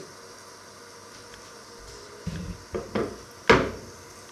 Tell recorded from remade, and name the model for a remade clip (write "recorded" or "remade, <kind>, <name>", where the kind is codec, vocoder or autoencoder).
recorded